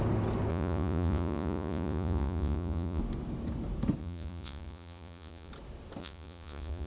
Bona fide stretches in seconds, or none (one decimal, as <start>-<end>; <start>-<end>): 0.0-0.5; 3.0-4.0; 5.5-6.0